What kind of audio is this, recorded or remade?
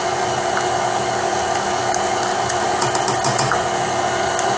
recorded